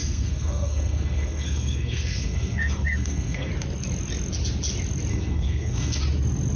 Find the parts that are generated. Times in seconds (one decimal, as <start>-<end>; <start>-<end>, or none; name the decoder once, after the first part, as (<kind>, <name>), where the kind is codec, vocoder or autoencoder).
0.0-3.5 (codec, SNAC); 5.1-6.0